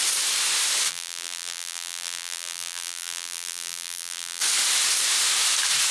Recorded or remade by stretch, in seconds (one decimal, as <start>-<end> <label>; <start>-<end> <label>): 0.0-0.9 recorded; 0.9-4.4 remade; 4.4-5.9 recorded